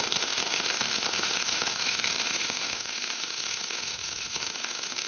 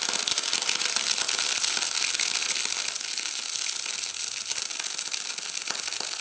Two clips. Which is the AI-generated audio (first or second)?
first